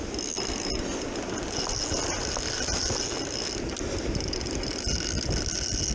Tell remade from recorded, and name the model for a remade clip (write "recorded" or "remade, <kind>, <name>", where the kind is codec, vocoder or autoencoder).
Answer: recorded